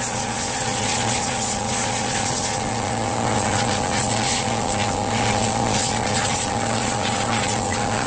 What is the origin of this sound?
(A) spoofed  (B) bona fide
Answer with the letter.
A